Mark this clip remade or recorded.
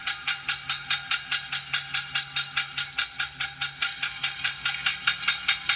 recorded